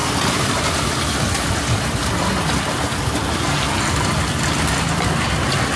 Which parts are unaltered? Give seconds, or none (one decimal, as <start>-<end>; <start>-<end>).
0.0-5.8